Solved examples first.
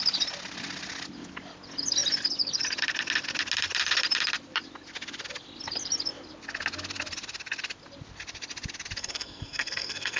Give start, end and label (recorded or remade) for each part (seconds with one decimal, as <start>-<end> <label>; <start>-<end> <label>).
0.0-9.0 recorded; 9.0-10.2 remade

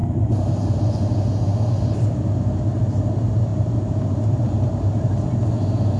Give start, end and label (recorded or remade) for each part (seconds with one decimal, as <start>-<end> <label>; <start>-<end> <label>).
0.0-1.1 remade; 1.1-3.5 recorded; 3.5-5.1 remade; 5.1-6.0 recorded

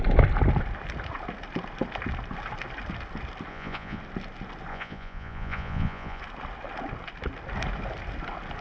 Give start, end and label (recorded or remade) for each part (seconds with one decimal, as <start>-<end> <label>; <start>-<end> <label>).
0.0-3.5 recorded; 3.5-4.0 remade; 4.0-4.7 recorded; 4.7-6.2 remade; 6.2-8.6 recorded